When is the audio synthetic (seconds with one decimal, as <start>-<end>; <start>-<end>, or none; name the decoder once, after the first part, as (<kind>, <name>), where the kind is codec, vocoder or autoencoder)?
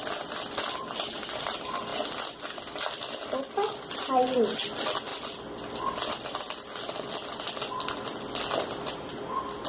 none